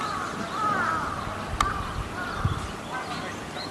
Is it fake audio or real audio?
fake